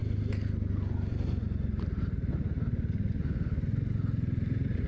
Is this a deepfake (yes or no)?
no